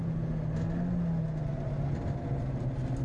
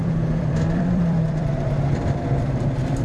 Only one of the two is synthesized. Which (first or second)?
second